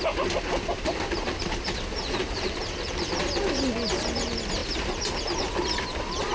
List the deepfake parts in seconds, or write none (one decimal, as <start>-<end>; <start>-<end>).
0.7-1.4; 2.2-3.0